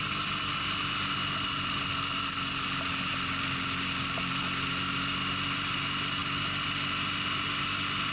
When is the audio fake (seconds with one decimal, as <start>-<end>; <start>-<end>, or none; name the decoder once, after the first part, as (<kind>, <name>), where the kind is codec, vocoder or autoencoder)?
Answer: none